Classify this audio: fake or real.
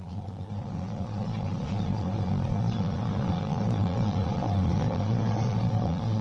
fake